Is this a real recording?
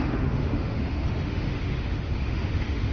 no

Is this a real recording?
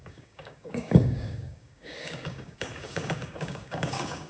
no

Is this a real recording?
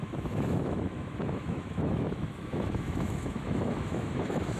no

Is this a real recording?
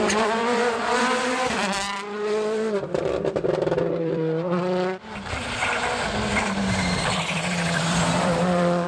no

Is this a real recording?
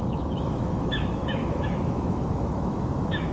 no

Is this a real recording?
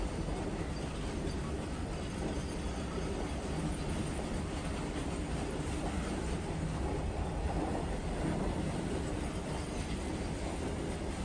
yes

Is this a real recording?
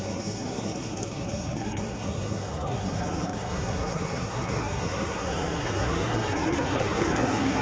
no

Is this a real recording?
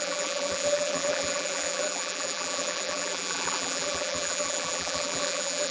no